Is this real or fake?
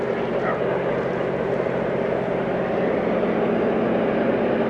real